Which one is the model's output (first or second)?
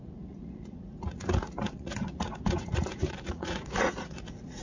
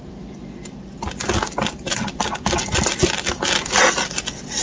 first